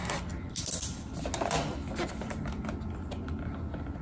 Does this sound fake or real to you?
real